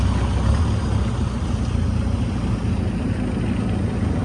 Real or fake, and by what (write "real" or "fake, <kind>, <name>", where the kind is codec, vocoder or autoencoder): real